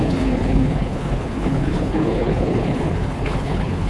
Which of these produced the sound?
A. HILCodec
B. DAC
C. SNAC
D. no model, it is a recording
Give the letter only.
A